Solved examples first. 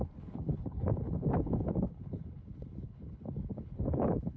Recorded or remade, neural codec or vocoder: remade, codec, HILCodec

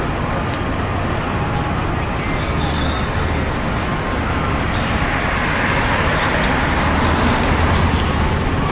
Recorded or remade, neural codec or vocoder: recorded